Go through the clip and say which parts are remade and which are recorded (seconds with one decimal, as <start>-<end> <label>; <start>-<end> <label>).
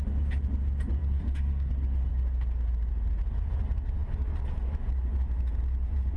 0.0-1.0 recorded; 1.0-1.7 remade; 1.7-6.2 recorded